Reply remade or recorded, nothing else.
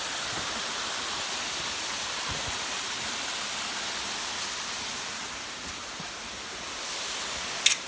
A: remade